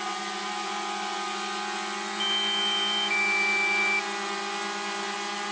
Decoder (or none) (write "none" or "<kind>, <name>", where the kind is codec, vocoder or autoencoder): none